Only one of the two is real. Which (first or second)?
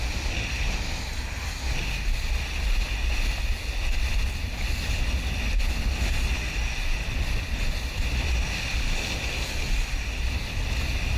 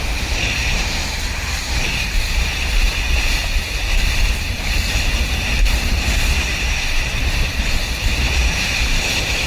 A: first